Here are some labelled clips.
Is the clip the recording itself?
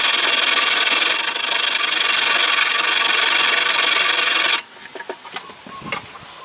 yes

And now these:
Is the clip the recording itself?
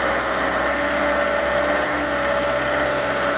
yes